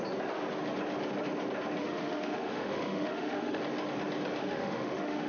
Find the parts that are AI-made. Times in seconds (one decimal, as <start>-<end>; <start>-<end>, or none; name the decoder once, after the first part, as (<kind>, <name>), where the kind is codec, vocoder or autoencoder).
1.8-3.6 (autoencoder, DAC-VAE); 4.4-5.3